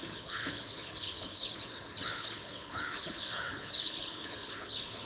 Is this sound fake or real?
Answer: fake